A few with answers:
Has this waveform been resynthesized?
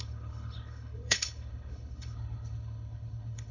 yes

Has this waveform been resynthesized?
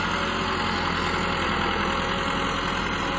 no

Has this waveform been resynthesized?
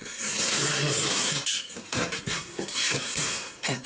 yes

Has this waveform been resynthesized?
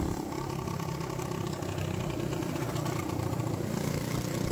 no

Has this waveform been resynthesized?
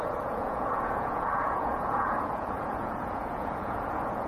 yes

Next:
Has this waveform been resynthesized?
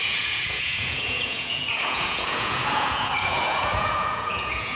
yes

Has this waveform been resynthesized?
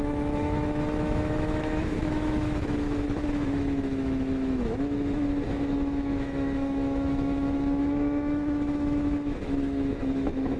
yes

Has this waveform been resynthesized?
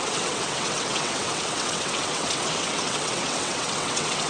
yes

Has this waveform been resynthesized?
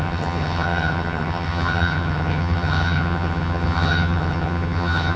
yes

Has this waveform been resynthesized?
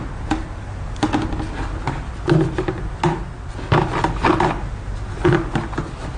no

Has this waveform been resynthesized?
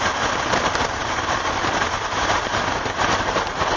yes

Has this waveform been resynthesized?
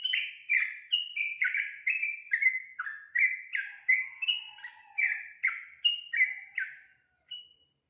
no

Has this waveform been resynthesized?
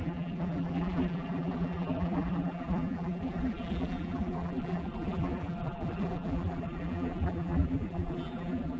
yes